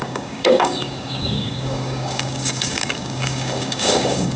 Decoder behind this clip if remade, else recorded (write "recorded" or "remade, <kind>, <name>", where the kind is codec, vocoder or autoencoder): remade, codec, DAC